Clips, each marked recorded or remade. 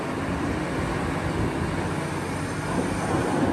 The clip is recorded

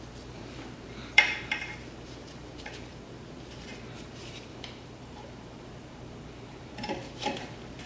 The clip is remade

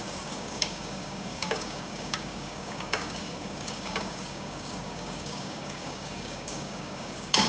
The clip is remade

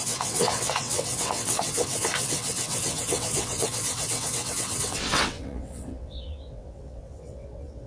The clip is remade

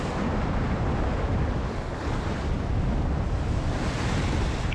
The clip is recorded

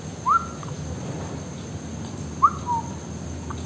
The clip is recorded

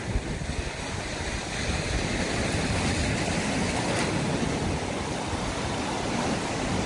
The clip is recorded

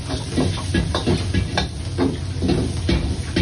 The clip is recorded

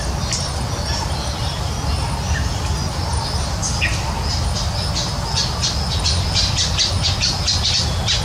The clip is recorded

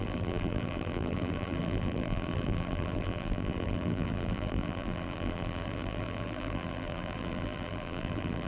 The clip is remade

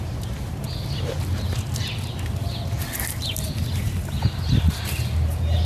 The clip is recorded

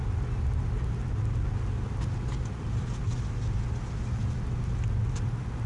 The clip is recorded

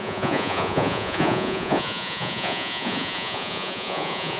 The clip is remade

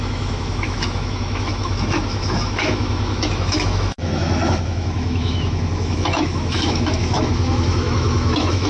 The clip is remade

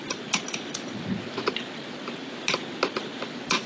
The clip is recorded